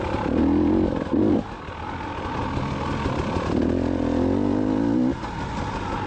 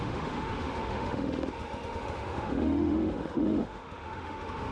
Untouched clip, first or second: first